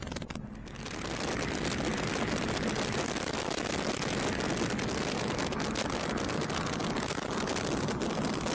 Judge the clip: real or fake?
real